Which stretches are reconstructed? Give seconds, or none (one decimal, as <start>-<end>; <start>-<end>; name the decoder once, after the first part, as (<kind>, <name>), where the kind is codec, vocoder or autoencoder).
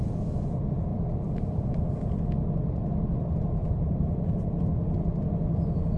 0.9-1.7 (vocoder, BigVGAN v2); 3.6-4.6